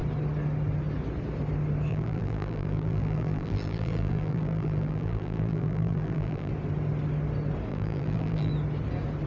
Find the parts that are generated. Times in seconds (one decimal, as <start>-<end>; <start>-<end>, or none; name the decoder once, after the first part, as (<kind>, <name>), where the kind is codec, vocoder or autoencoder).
1.9-6.5 (vocoder, BigVGAN v2); 7.7-8.5